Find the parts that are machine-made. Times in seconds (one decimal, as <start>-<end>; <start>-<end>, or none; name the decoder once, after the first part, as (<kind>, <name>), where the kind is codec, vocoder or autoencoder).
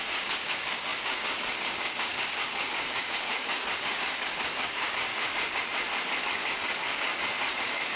0.0-5.1 (codec, DAC); 6.2-7.1; 7.6-8.0